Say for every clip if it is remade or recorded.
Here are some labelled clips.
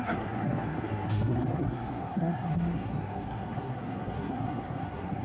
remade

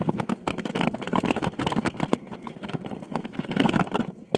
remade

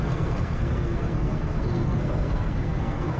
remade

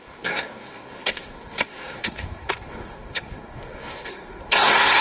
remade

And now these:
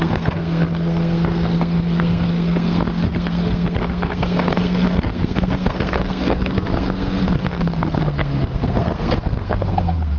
remade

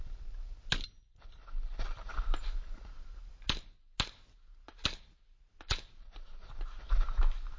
recorded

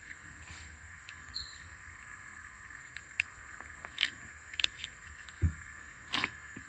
remade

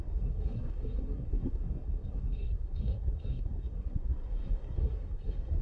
remade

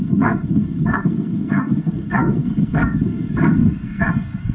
remade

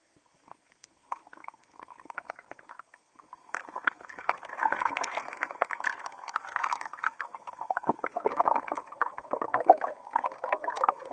remade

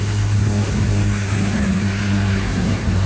remade